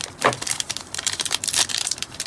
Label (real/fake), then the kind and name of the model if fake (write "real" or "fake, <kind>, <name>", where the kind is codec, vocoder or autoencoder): fake, vocoder, BigVGAN v2